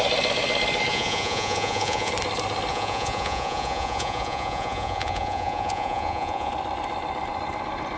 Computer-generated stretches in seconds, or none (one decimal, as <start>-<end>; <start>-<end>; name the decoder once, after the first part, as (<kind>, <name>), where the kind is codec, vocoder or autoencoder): 0.9-2.1 (vocoder, Vocos); 2.7-6.5

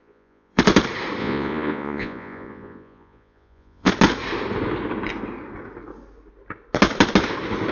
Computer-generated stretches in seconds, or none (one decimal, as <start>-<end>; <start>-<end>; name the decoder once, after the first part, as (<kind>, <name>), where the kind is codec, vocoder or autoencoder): 0.0-0.6 (vocoder, Vocos); 1.2-3.9

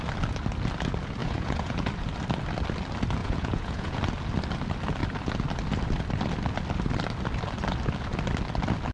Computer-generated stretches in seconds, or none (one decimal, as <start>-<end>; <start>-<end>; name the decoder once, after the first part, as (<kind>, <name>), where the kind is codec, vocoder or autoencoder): 1.2-1.9 (vocoder, Vocos); 3.2-4.0

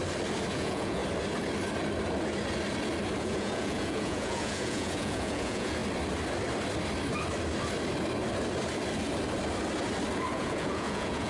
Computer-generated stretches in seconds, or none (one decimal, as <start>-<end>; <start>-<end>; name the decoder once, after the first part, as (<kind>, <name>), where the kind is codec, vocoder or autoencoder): 0.5-1.0 (vocoder, Vocos); 3.2-5.8; 10.3-11.3

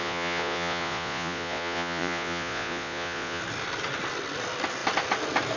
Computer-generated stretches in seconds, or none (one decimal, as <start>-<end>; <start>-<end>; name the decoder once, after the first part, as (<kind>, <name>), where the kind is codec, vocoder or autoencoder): 0.0-3.4 (vocoder, Vocos)

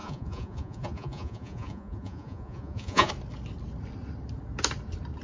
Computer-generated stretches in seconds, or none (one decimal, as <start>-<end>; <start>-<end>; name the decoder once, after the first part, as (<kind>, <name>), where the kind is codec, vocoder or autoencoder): 0.0-3.1 (vocoder, Vocos)

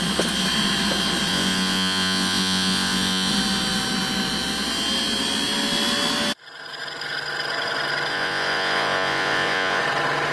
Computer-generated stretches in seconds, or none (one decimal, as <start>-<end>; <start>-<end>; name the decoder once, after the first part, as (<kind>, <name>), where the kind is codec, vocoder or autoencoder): 1.3-3.3 (vocoder, Vocos); 8.1-9.8